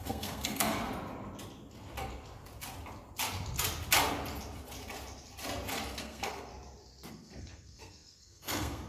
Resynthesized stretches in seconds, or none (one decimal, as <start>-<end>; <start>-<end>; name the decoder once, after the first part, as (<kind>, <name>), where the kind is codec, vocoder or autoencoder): 0.0-0.9 (codec, SNAC); 6.0-6.5; 7.1-8.9